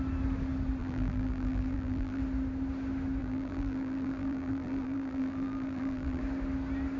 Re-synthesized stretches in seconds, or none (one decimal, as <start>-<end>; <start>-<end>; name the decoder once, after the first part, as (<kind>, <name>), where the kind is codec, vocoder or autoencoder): 0.8-2.2 (vocoder, BigVGAN v2); 3.2-6.2